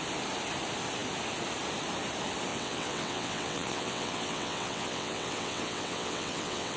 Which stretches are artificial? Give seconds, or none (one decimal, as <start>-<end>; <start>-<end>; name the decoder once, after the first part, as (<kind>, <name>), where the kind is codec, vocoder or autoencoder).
2.5-6.8 (vocoder, WaveNeXt)

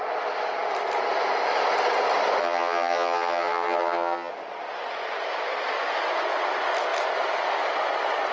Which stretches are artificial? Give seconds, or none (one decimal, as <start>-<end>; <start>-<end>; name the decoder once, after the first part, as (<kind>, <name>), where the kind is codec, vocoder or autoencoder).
2.4-4.3 (vocoder, HiFi-GAN)